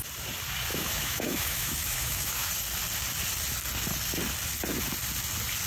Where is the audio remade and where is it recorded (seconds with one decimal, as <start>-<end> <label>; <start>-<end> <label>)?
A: 0.0-0.7 recorded; 0.7-2.5 remade; 2.5-5.7 recorded